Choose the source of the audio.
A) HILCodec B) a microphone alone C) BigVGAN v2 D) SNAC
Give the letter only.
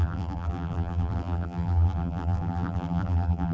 C